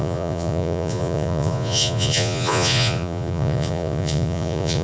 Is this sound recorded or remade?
remade